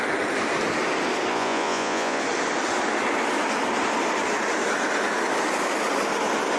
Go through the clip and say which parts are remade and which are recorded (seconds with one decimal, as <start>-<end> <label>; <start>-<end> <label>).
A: 0.0-1.3 recorded; 1.3-2.2 remade; 2.2-6.6 recorded